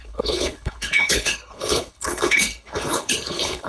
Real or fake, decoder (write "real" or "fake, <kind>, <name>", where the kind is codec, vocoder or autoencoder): fake, codec, HILCodec